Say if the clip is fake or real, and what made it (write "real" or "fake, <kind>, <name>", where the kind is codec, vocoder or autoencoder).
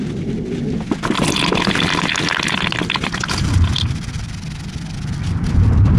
real